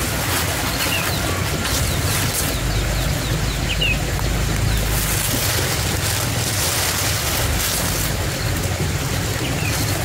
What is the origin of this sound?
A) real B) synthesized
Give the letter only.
A